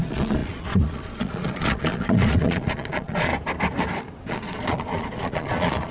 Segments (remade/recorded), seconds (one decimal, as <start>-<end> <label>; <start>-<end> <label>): 0.0-3.3 remade; 3.3-4.3 recorded; 4.3-5.9 remade